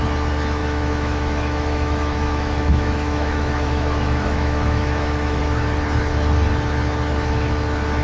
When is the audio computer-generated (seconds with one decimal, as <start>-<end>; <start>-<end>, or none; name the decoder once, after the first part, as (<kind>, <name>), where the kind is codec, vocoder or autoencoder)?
0.6-5.4 (autoencoder, DAC-VAE)